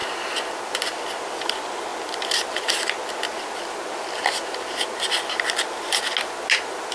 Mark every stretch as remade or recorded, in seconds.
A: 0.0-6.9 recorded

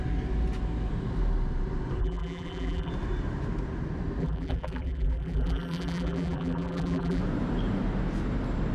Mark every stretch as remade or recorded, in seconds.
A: 0.0-2.0 recorded; 2.0-2.9 remade; 2.9-4.2 recorded; 4.2-7.2 remade; 7.2-8.7 recorded

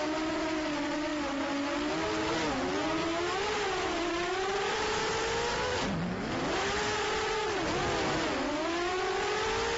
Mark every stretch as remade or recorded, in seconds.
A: 0.0-3.0 recorded; 3.0-5.0 remade; 5.0-9.8 recorded

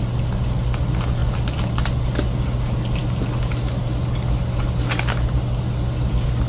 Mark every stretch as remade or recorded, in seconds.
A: 0.0-1.2 recorded; 1.2-1.7 remade; 1.7-6.5 recorded

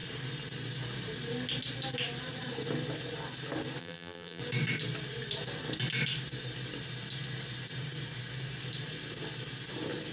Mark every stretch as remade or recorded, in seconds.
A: 0.0-3.8 recorded; 3.8-4.4 remade; 4.4-10.1 recorded

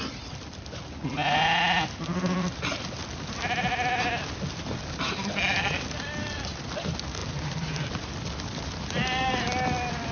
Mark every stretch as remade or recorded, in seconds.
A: 0.0-7.2 recorded; 7.2-7.9 remade; 7.9-10.1 recorded